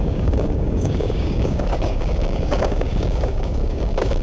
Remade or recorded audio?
remade